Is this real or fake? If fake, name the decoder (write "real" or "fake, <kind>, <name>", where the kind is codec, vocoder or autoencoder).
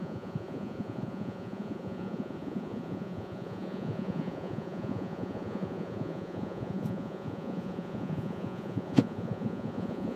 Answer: fake, vocoder, Vocos